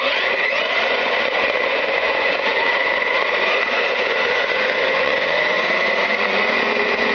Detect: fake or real fake